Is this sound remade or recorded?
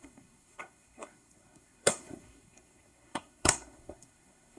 remade